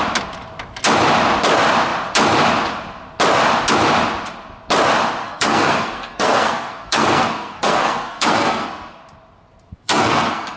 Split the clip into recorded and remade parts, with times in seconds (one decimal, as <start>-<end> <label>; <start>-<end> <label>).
0.0-5.2 recorded; 5.2-9.0 remade; 9.0-9.7 recorded; 9.7-10.6 remade